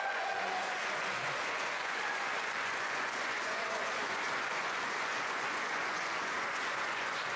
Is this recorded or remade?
remade